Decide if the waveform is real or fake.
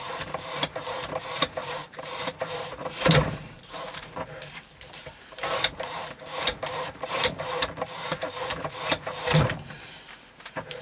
fake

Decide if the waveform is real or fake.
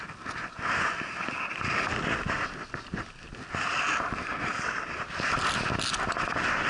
real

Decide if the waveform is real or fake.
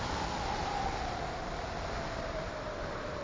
real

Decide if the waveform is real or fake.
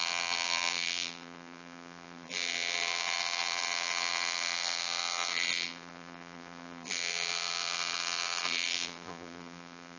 fake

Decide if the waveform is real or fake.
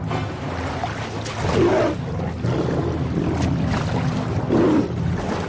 real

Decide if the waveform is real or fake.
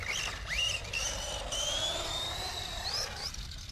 real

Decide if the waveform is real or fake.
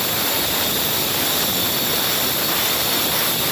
fake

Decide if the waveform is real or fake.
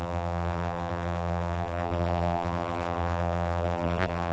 fake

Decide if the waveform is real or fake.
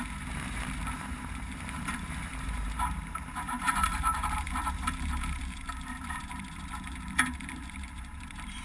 fake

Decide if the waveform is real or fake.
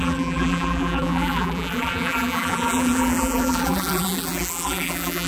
fake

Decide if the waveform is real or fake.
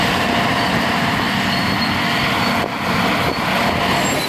real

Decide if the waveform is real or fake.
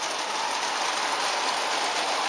real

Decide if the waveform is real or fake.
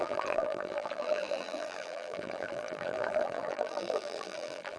fake